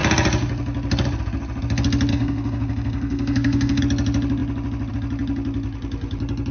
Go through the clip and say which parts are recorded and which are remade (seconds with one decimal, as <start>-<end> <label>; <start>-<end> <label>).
0.0-2.1 recorded; 2.1-3.8 remade; 3.8-6.5 recorded